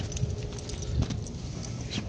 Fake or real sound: real